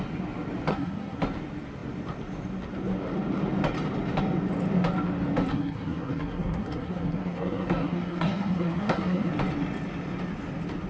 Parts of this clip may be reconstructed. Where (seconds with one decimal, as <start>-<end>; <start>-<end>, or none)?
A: 0.7-1.2; 5.5-9.3